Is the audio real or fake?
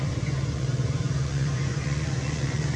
fake